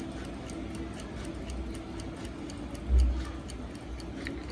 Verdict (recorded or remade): recorded